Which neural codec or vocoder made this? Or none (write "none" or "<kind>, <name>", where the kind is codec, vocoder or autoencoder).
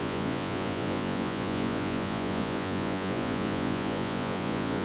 vocoder, Vocos